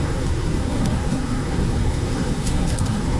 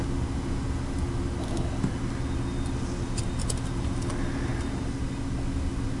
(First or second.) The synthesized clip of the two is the first